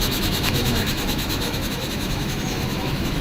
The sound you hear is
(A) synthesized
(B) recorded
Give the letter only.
A